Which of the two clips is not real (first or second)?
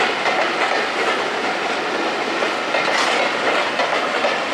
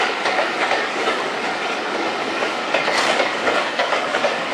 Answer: second